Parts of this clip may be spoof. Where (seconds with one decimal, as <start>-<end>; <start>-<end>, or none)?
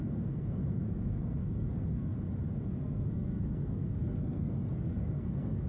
0.0-2.1; 2.8-5.7